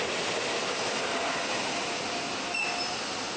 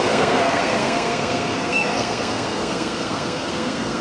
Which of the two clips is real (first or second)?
first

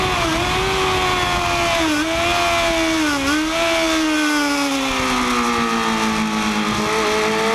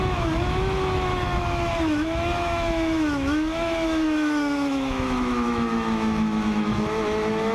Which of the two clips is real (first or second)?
first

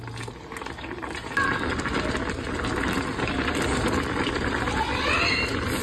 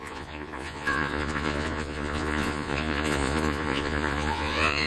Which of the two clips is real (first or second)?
first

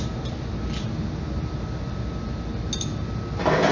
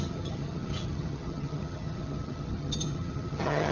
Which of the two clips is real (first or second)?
first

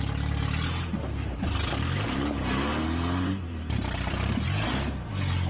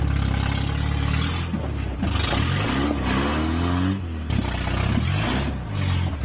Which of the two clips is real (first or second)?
second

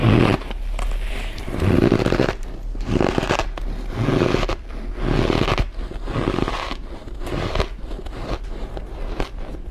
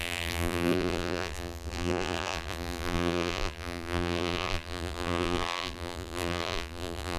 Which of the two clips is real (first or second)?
first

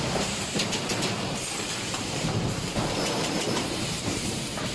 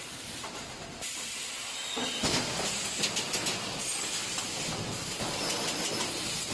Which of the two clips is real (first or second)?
second